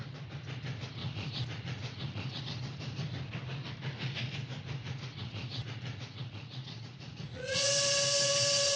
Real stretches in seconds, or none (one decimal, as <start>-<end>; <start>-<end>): 0.0-1.0; 2.4-4.8; 7.7-8.8